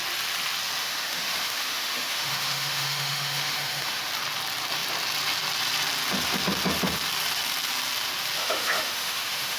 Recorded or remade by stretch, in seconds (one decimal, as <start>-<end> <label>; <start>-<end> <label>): 0.0-0.8 recorded; 0.8-4.1 remade; 4.1-8.4 recorded; 8.4-9.6 remade

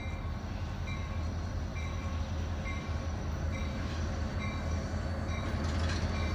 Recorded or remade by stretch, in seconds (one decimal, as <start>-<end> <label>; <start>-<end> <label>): 0.0-6.3 recorded

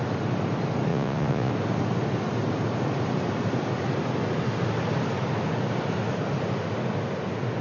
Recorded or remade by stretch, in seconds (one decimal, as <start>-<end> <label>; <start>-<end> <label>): 0.0-0.9 recorded; 0.9-1.5 remade; 1.5-7.6 recorded